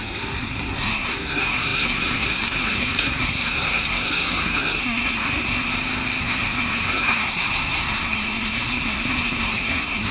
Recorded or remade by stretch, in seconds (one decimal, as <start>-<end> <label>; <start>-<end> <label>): 0.0-5.7 remade; 5.7-6.2 recorded; 6.2-10.1 remade